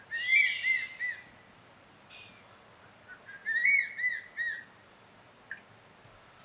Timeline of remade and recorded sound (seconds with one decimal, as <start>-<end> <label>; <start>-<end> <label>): 0.0-6.4 recorded